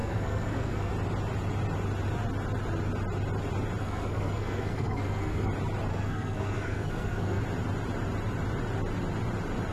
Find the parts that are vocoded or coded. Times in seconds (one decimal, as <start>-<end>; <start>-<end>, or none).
0.0-0.9; 3.8-5.5; 5.9-7.4